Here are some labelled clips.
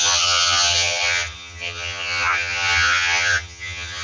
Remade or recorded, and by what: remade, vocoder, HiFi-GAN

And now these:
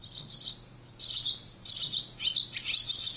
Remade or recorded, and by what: recorded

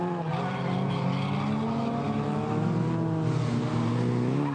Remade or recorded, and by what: recorded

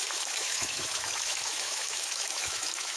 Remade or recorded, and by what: remade, autoencoder, DAC-VAE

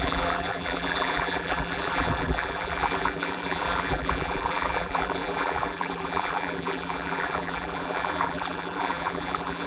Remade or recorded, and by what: remade, vocoder, BigVGAN v2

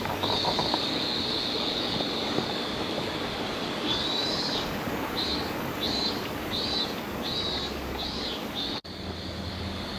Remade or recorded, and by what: remade, codec, DAC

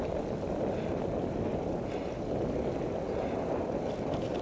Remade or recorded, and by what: recorded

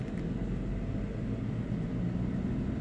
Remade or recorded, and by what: recorded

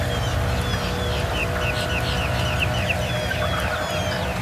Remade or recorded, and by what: recorded